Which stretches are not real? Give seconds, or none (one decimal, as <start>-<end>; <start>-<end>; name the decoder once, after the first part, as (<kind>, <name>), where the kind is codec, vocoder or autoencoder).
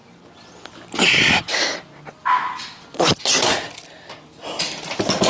none